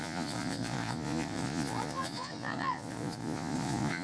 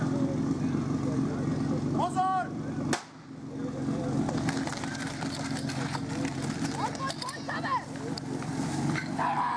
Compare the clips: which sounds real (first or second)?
second